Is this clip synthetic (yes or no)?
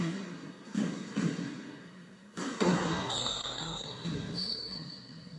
yes